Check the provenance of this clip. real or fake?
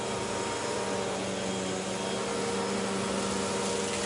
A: real